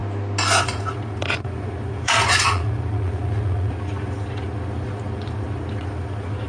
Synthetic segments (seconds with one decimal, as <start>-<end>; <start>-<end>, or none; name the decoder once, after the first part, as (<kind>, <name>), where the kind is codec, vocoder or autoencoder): 0.6-6.5 (vocoder, Vocos)